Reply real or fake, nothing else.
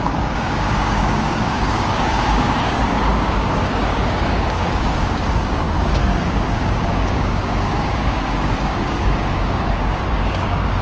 fake